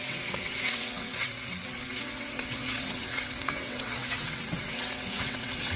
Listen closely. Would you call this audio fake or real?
fake